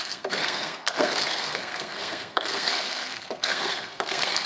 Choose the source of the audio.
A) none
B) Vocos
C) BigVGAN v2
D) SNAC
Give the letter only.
D